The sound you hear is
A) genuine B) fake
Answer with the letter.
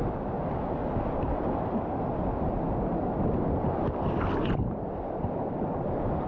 A